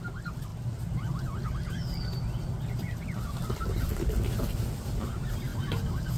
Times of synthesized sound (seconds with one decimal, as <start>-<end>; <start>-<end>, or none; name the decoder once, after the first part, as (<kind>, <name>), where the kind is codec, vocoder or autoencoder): none